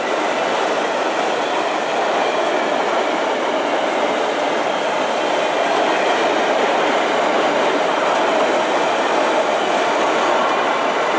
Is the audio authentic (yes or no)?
yes